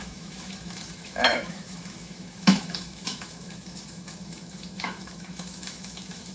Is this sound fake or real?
fake